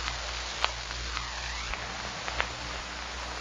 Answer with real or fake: real